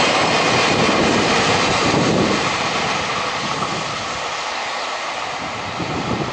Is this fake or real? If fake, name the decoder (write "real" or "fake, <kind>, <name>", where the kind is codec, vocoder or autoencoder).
real